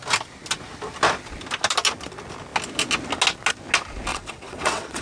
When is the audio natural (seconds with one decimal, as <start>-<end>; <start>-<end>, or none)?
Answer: 0.0-4.1